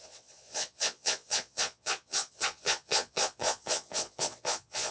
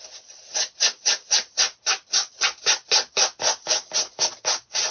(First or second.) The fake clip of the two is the first